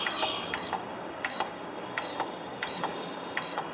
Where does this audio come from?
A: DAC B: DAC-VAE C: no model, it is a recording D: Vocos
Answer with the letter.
A